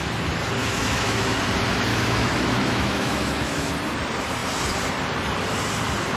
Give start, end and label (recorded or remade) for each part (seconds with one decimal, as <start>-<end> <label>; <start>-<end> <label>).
0.0-0.6 recorded; 0.6-1.4 remade; 1.4-1.9 recorded; 1.9-3.7 remade; 3.7-6.2 recorded